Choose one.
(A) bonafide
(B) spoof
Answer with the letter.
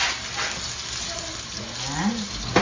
A